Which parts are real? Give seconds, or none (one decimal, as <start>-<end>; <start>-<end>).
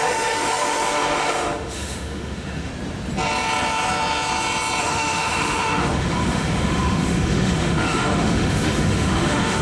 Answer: 2.7-4.8